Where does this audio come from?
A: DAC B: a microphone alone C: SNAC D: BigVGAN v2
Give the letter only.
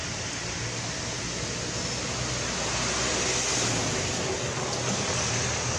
B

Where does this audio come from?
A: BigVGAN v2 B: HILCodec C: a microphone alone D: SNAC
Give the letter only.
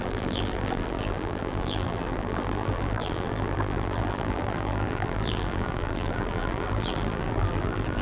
A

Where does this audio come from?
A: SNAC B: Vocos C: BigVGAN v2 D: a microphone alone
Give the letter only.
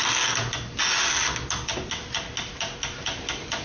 D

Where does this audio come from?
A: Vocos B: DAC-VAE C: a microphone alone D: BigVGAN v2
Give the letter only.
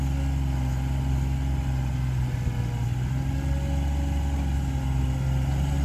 C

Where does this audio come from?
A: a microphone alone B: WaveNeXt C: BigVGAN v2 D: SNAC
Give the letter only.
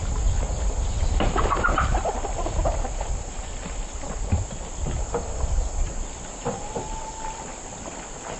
A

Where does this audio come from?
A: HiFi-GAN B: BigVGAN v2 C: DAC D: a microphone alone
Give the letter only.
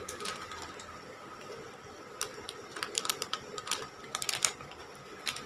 D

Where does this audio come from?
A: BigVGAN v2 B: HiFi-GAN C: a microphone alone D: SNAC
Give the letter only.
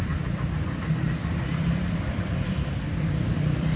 A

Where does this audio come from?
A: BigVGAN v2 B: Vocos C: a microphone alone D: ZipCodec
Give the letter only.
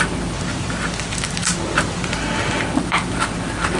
A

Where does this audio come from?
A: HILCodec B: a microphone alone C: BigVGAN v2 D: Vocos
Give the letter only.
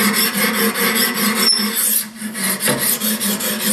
B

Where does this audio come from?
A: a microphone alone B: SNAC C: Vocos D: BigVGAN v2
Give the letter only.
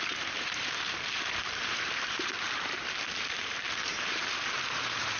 D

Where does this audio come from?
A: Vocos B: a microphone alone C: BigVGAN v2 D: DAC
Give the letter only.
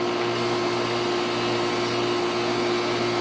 B